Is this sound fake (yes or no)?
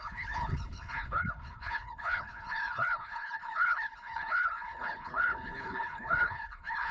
yes